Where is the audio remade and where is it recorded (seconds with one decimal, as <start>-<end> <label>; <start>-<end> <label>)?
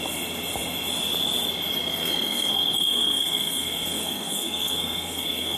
0.0-1.9 recorded; 1.9-5.6 remade